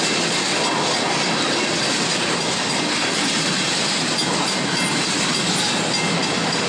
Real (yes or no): yes